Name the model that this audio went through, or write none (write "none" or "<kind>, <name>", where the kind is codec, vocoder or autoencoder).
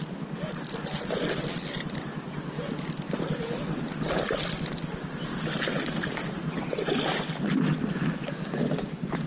none